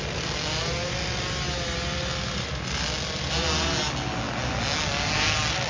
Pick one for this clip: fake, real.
real